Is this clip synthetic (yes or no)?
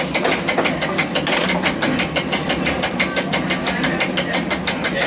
no